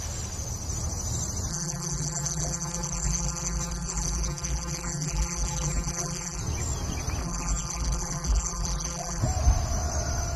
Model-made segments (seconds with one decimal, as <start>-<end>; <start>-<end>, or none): 1.5-6.4; 7.2-9.2